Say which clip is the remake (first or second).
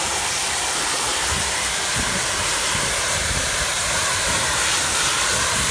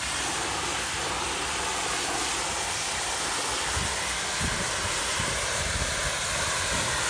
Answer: first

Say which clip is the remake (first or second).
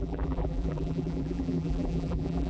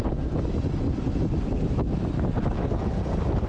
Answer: first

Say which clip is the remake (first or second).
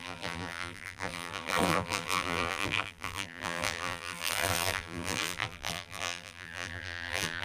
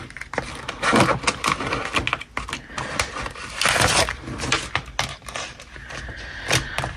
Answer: first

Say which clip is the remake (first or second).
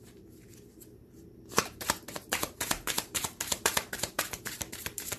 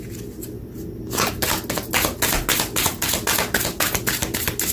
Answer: first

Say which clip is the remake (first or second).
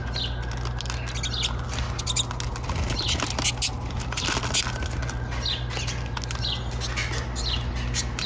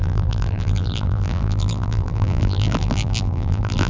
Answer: second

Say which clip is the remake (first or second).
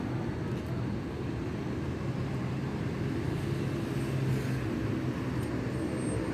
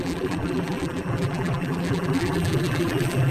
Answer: second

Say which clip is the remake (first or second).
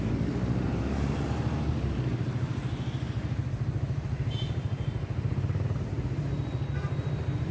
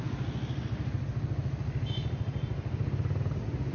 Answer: first